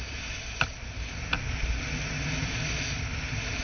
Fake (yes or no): no